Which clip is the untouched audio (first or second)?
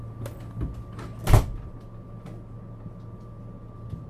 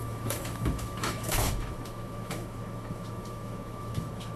first